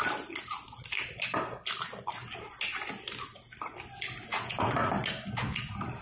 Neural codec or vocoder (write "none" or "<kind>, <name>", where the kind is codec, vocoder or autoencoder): none